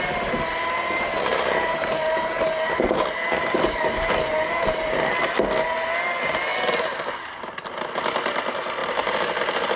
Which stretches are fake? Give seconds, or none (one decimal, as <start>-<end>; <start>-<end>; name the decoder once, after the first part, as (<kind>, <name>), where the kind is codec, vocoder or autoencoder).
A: 1.3-5.2 (vocoder, BigVGAN v2); 8.8-9.4